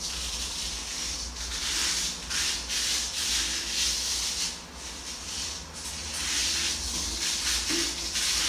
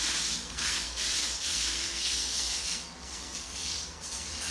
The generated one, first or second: second